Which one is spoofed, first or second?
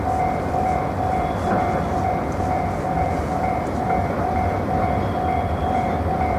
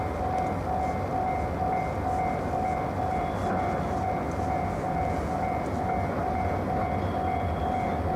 first